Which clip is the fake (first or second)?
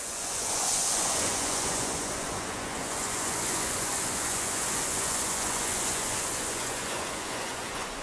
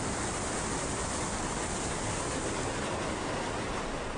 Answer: first